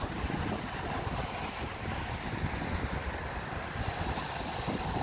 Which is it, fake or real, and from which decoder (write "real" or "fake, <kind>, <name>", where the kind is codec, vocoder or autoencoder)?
fake, vocoder, BigVGAN v2